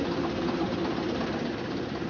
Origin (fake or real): real